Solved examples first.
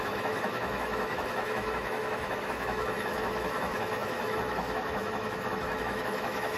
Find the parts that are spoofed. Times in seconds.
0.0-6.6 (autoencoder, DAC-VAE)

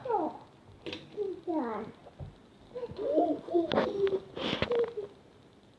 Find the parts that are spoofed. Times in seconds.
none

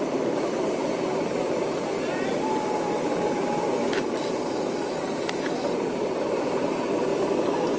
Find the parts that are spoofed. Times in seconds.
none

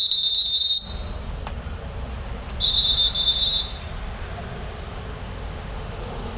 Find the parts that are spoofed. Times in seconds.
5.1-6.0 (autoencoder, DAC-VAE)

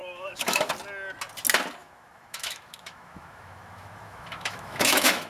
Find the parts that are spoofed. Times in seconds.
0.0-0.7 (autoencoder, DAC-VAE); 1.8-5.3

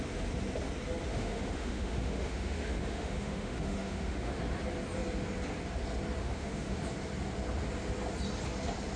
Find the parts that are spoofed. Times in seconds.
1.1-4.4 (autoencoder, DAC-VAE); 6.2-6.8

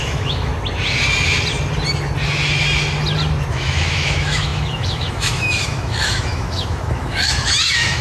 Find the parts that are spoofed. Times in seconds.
0.0-0.5 (autoencoder, DAC-VAE); 3.5-8.0